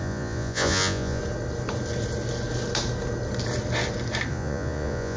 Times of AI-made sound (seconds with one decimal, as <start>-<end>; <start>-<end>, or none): 0.0-1.2; 4.3-5.2